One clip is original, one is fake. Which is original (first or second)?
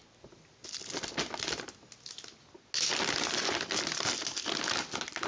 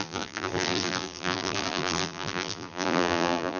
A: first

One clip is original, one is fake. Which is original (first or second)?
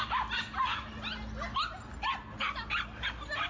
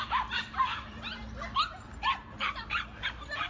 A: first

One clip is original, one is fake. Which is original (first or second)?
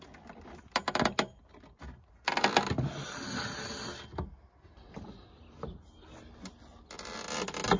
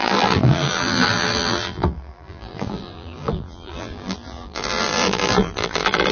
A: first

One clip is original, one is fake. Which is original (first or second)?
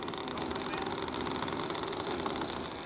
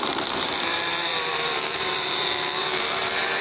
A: first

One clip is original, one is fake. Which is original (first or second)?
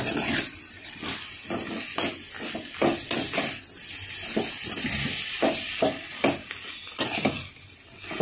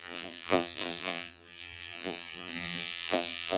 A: first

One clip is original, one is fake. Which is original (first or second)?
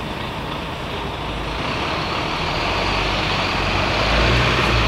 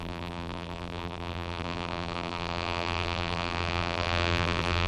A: first